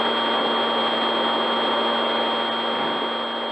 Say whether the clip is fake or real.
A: real